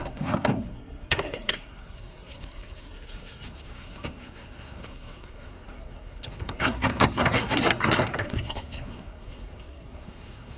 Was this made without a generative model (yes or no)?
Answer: no